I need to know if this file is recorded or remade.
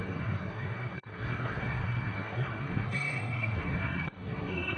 remade